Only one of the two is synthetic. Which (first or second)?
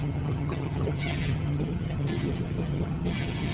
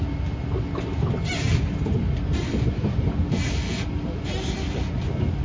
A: first